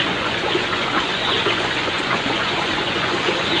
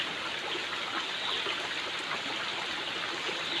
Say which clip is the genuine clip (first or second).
second